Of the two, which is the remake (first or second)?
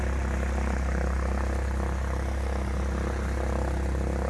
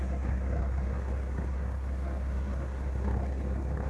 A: second